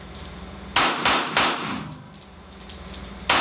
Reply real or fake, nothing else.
real